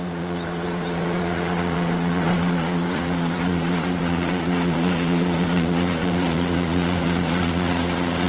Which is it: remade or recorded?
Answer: remade